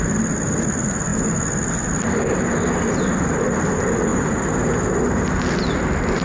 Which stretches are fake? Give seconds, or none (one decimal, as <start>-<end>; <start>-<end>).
none